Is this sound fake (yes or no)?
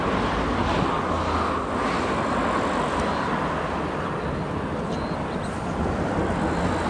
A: no